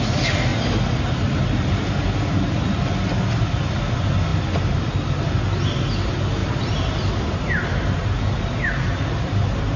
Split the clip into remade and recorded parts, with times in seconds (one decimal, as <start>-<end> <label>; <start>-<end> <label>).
0.0-6.4 recorded; 6.4-7.1 remade; 7.1-8.0 recorded; 8.0-9.8 remade